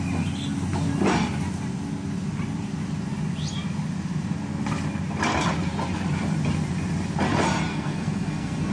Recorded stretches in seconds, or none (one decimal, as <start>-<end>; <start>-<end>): 0.0-7.7